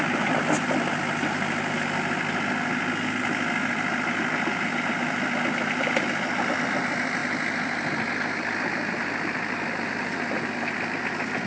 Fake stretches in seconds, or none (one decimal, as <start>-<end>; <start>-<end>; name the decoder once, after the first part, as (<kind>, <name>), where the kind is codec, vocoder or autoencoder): none